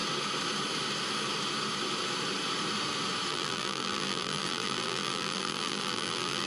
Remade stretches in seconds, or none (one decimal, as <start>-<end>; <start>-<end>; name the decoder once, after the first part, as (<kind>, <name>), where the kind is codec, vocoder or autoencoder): 3.3-6.5 (vocoder, BigVGAN v2)